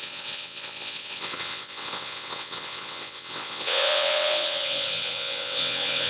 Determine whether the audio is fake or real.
fake